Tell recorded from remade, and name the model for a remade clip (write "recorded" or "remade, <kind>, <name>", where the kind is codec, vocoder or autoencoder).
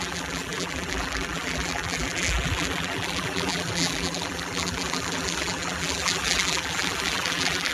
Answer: remade, vocoder, BigVGAN v2